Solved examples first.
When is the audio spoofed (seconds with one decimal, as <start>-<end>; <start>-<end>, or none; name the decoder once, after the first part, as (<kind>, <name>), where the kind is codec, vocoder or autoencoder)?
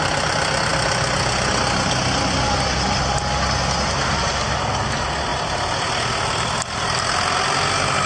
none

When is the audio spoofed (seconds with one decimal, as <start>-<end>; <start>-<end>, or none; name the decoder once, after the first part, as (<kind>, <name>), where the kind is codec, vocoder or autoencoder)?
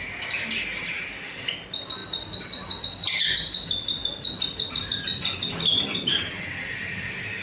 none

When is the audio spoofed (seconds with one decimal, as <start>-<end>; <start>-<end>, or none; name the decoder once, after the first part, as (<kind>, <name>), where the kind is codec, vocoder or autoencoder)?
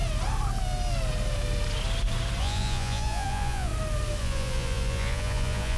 2.4-3.7 (vocoder, Vocos); 4.2-5.8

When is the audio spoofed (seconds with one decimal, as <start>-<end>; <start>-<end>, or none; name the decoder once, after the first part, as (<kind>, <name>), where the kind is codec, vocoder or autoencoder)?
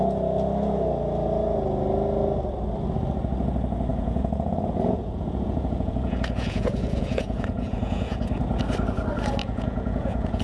3.9-8.2 (vocoder, Vocos); 9.4-10.4